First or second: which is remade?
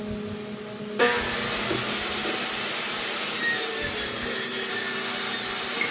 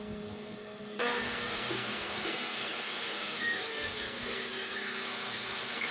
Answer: second